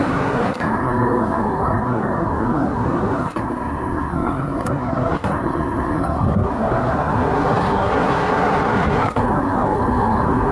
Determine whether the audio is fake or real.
fake